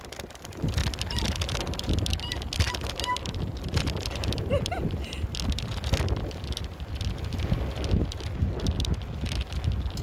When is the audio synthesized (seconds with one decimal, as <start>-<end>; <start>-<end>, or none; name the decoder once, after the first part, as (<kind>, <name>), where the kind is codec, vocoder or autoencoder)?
none